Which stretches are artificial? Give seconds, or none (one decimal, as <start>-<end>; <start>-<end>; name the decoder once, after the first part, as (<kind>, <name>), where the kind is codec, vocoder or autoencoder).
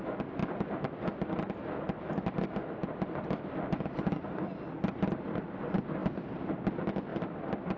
2.8-5.0 (vocoder, BigVGAN v2); 6.0-6.6; 7.1-7.8